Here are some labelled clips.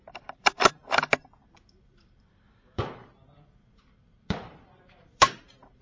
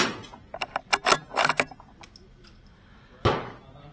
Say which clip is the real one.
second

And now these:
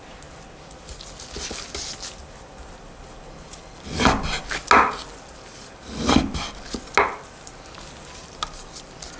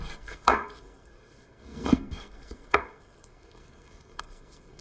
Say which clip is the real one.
first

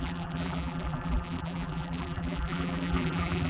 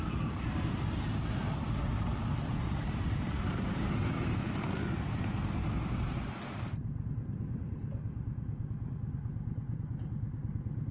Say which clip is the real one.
second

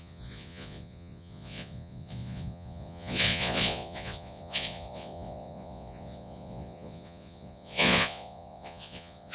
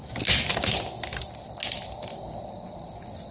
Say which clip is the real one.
second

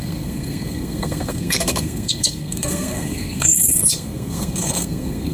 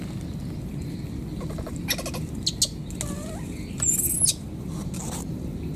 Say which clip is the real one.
second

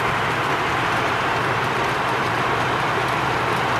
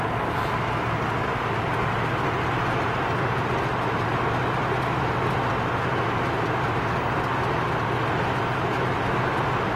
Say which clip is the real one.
second